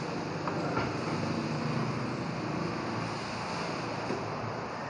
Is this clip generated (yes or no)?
no